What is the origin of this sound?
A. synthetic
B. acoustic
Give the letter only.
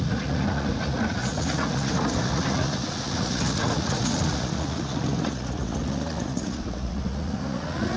A